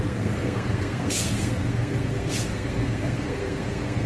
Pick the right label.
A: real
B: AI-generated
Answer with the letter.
B